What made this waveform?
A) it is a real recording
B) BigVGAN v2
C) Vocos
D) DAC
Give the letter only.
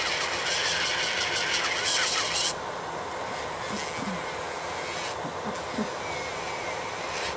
A